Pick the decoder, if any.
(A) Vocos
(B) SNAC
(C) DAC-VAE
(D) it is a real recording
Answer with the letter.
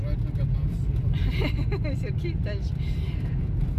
D